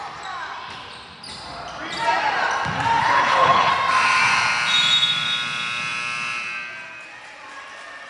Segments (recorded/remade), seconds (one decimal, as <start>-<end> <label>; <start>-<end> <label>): 0.0-3.0 recorded; 3.0-3.7 remade; 3.7-8.1 recorded